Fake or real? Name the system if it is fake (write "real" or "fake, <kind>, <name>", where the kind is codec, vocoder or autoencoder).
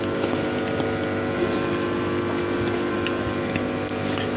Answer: real